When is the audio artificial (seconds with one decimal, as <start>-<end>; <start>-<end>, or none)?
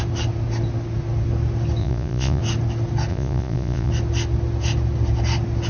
1.8-2.4; 3.1-3.9